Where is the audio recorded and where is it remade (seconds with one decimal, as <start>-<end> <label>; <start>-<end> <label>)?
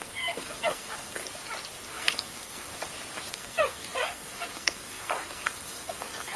0.0-1.2 remade; 1.2-1.9 recorded; 1.9-2.7 remade; 2.7-3.3 recorded; 3.3-6.4 remade